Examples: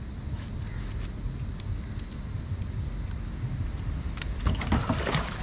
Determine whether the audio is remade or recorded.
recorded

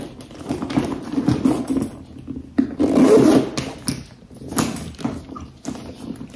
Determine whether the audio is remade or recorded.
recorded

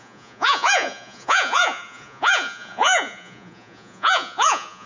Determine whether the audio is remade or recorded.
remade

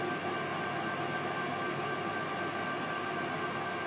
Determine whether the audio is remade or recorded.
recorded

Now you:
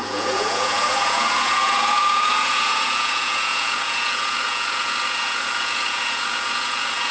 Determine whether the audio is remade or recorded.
remade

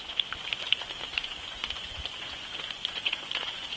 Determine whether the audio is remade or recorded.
remade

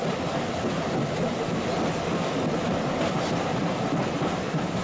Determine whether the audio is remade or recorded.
recorded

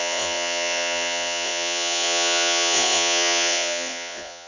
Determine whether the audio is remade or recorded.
remade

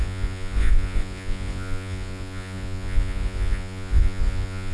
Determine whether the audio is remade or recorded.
remade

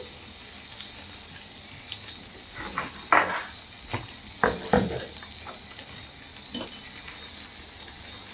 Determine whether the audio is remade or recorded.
recorded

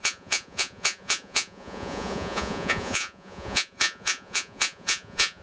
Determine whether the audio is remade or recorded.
remade